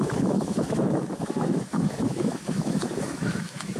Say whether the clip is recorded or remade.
remade